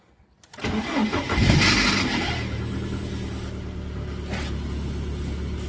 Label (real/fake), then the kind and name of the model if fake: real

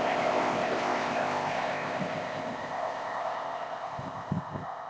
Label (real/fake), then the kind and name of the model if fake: fake, codec, ZipCodec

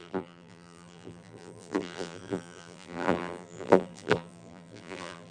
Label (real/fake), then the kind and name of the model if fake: fake, vocoder, BigVGAN v2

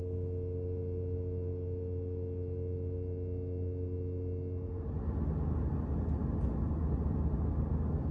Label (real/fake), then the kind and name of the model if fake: real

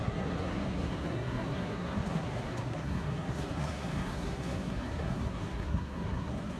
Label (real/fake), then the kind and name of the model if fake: fake, codec, SNAC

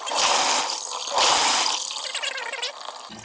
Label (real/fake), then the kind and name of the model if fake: real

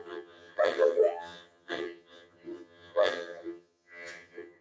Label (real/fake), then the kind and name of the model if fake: fake, vocoder, HiFi-GAN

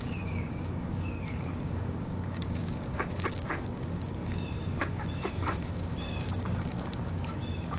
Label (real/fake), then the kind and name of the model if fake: fake, codec, DAC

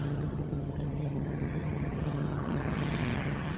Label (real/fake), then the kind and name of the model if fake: fake, vocoder, HiFi-GAN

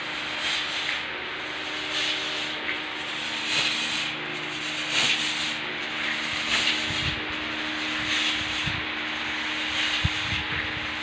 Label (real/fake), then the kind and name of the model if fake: real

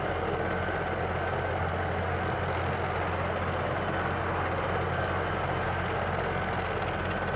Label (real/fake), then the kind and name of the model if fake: real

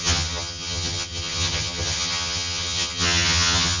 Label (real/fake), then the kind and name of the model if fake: fake, vocoder, HiFi-GAN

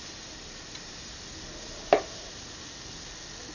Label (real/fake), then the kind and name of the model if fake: real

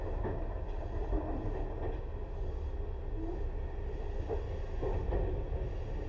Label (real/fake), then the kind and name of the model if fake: real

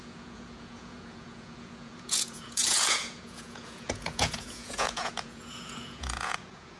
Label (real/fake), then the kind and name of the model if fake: fake, vocoder, Vocos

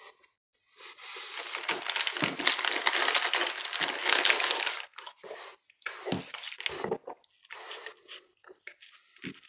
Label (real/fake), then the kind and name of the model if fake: real